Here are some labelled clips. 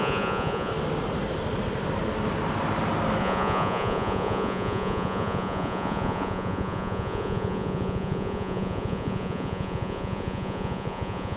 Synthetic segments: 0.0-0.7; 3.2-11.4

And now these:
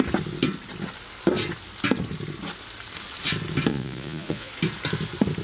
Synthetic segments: 3.7-4.5

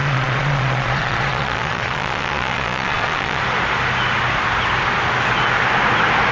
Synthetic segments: 0.0-3.4

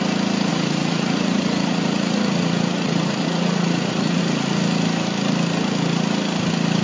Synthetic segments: 0.5-4.2

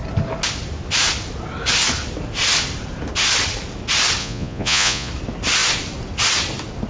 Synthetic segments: 4.2-5.1

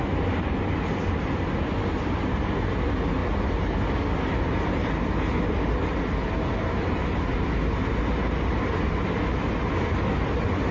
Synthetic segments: none